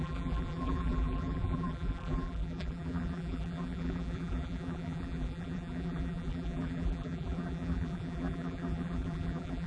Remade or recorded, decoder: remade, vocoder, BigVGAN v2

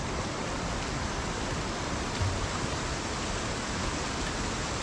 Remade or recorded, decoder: recorded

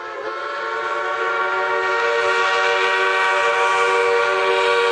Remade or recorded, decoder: recorded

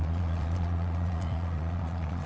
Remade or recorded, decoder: remade, vocoder, Vocos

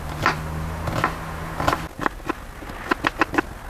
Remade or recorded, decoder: recorded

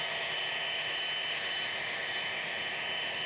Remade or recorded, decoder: recorded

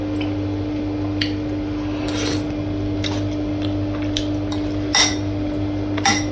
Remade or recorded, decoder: recorded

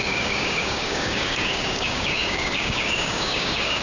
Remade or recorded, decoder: remade, codec, DAC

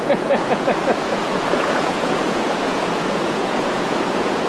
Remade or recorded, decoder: remade, vocoder, Vocos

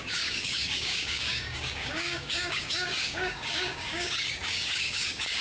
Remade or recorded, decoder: remade, codec, DAC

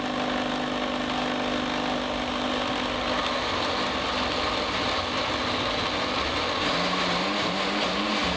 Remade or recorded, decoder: recorded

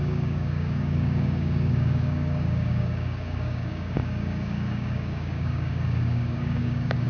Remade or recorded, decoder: remade, codec, DAC